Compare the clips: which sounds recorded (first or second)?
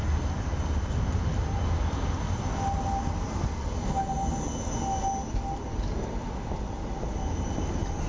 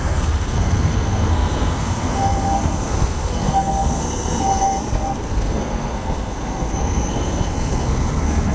first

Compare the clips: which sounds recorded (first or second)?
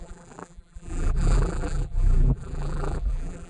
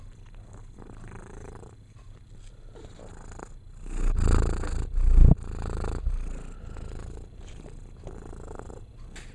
second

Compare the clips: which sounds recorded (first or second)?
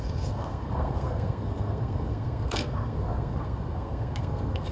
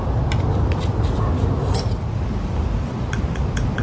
second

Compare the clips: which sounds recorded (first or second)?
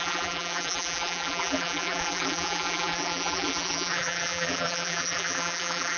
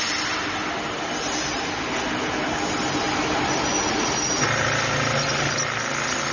second